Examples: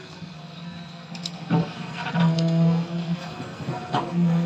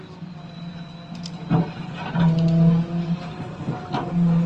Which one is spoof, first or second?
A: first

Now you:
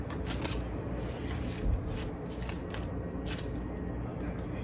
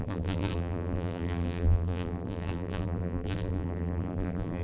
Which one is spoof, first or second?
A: second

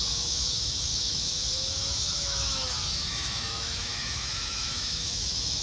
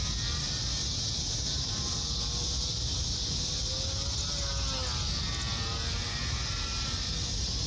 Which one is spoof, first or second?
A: first